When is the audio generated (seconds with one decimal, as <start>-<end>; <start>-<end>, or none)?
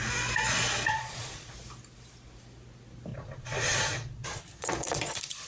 0.9-1.5; 3.1-5.5